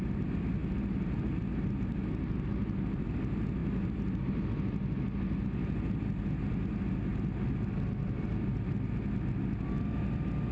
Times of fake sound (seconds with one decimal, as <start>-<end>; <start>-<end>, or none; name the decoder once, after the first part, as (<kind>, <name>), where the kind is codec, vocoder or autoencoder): none